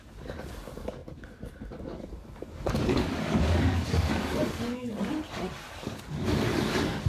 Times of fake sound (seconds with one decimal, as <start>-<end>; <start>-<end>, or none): 0.0-4.9; 5.7-7.1